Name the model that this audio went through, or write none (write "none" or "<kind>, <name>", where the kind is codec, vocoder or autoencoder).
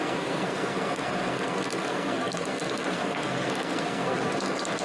codec, SNAC